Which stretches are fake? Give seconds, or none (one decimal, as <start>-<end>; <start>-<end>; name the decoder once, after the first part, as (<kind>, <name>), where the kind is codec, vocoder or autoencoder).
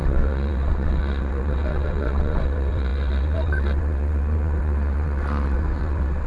0.0-6.3 (vocoder, WaveNeXt)